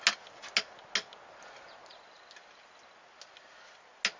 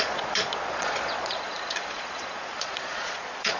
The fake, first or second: second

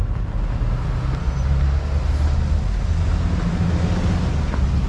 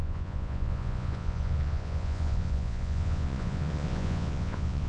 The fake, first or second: second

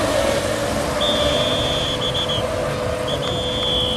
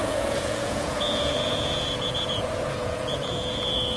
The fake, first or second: second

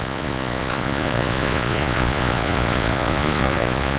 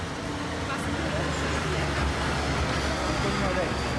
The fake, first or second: first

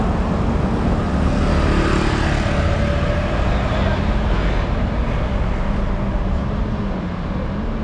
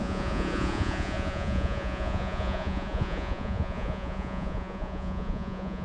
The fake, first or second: second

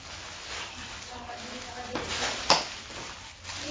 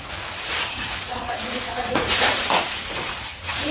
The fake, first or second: second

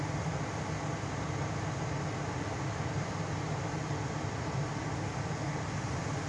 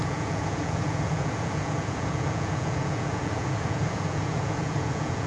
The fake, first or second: second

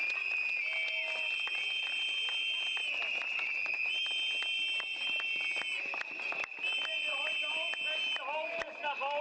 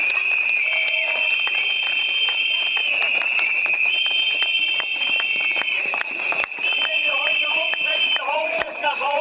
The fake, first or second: second